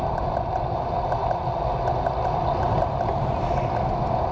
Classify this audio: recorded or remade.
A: recorded